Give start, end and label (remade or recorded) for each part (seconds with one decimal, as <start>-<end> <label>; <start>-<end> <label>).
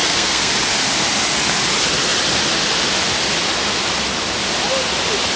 0.0-0.5 remade; 0.5-5.4 recorded